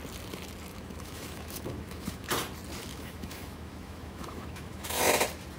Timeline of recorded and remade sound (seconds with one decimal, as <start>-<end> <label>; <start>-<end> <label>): 0.0-0.7 recorded; 0.7-2.3 remade; 2.3-2.9 recorded; 2.9-5.0 remade; 5.0-5.6 recorded